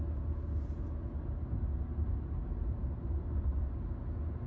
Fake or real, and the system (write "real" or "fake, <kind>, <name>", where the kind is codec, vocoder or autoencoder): real